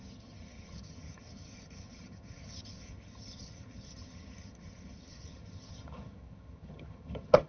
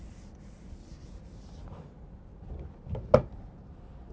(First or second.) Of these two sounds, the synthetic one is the first